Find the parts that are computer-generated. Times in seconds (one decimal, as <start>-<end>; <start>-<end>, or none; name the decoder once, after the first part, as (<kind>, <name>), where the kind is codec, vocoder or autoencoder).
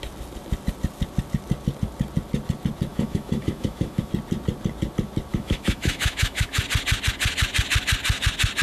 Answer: 2.9-4.1 (autoencoder, DAC-VAE); 5.3-6.6